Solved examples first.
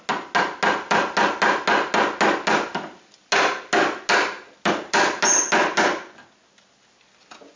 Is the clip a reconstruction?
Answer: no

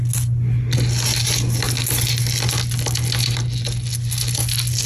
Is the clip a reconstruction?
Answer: no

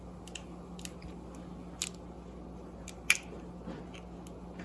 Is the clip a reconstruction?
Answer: no